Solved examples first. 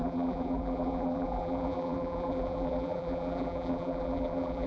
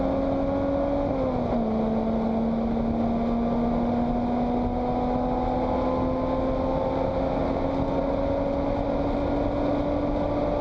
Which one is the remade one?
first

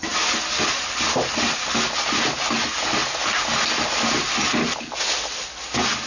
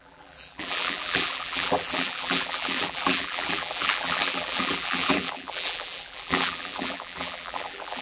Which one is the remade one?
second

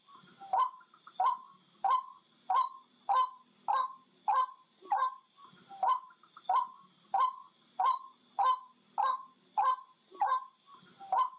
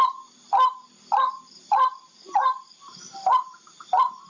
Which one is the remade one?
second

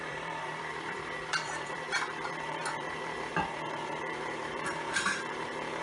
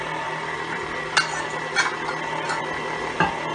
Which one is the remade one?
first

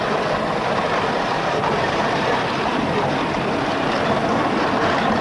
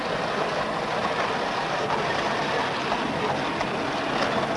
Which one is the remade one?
first